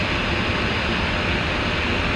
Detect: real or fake real